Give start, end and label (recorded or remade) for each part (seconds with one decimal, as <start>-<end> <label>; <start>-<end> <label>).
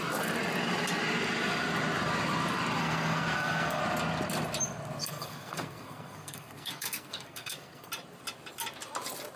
0.0-2.8 recorded; 2.8-3.8 remade; 3.8-5.0 recorded; 5.0-7.9 remade; 7.9-9.4 recorded